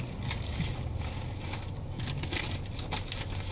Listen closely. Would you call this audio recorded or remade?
recorded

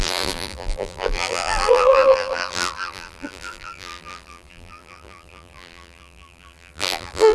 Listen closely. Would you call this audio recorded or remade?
remade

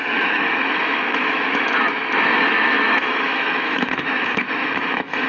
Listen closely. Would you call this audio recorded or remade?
remade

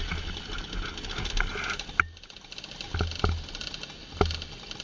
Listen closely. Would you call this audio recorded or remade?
recorded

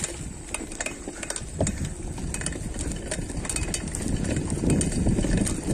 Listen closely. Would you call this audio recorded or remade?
recorded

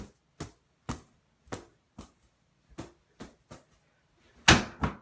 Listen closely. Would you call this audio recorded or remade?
recorded